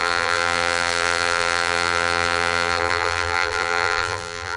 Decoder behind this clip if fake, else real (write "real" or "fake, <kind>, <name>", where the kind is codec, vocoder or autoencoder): fake, vocoder, BigVGAN v2